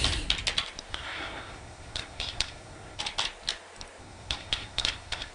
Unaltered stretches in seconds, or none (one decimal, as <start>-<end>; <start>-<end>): 0.0-0.9; 3.0-4.0